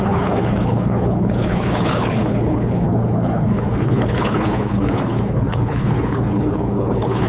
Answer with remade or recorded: remade